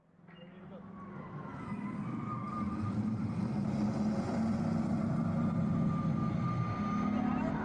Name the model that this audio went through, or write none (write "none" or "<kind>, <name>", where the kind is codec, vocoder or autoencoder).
none